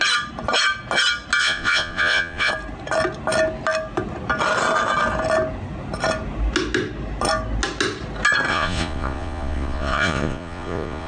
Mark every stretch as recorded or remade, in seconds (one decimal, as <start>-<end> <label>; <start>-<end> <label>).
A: 0.0-1.4 recorded; 1.4-2.5 remade; 2.5-8.5 recorded; 8.5-11.1 remade

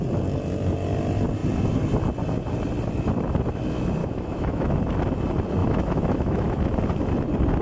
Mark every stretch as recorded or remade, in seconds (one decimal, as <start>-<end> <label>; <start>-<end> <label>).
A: 0.0-4.0 recorded; 4.0-4.8 remade; 4.8-5.6 recorded; 5.6-6.6 remade; 6.6-7.6 recorded

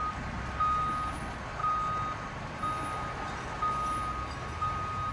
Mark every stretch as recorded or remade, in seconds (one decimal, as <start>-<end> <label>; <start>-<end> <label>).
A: 0.0-5.1 recorded